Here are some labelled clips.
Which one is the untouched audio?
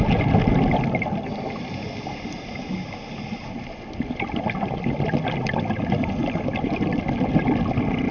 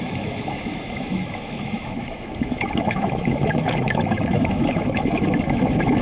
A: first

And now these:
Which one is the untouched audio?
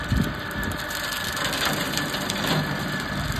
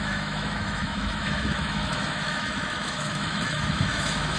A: first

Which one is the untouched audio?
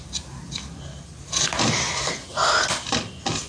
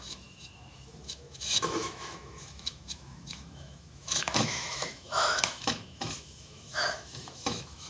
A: first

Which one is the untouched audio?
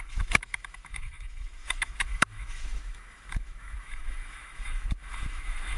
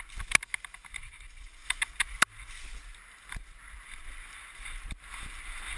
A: second